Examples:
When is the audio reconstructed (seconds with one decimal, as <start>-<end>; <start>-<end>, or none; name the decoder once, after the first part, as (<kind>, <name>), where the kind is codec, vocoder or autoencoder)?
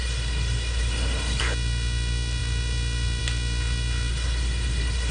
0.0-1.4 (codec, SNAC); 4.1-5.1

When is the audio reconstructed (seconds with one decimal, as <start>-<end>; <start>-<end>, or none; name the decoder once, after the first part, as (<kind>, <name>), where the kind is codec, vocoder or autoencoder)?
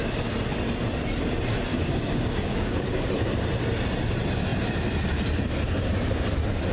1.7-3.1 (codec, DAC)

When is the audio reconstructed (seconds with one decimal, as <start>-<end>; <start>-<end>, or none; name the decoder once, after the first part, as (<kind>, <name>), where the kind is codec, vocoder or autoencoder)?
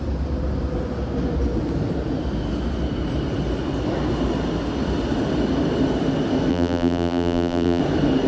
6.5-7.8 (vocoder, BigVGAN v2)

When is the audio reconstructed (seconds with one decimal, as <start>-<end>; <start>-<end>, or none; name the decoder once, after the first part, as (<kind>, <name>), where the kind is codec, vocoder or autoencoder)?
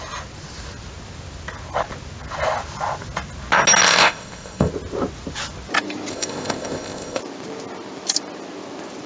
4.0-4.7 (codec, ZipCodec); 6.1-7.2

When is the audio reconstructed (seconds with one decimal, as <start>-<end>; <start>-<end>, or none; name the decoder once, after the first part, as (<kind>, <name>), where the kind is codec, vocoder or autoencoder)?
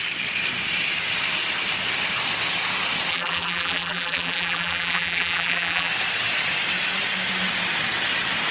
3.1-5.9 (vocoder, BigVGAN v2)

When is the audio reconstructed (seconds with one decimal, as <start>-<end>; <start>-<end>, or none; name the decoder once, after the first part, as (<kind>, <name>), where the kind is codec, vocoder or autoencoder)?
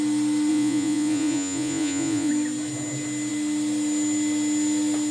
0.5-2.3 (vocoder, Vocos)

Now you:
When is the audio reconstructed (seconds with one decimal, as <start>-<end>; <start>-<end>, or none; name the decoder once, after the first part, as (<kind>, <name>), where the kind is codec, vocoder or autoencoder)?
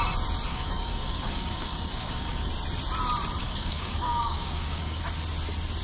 0.5-2.5 (codec, DAC); 3.4-5.0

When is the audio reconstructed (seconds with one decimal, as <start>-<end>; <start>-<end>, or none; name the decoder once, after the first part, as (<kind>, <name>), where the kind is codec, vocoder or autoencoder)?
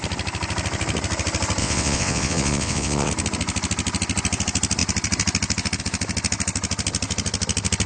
1.6-3.1 (vocoder, WaveNeXt)